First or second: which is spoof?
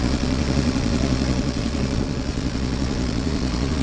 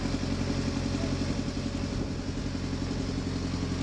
first